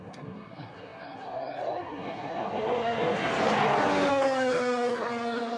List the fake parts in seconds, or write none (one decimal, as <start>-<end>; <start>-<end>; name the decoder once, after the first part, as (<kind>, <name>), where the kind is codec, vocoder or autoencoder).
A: 0.0-3.3 (codec, SNAC); 4.1-5.6